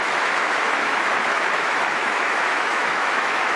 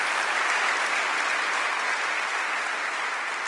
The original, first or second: second